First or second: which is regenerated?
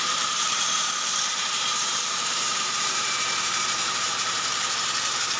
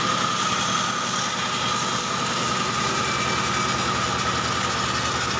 first